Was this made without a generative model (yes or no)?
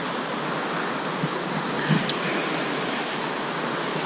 yes